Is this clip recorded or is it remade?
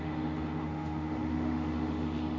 remade